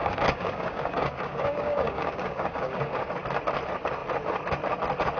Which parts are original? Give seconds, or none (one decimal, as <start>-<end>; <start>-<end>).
3.1-5.2